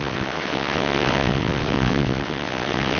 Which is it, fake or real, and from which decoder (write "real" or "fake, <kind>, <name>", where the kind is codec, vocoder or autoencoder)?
fake, vocoder, WaveNeXt